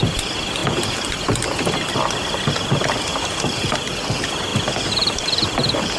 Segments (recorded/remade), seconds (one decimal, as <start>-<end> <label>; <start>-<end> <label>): 0.0-6.0 recorded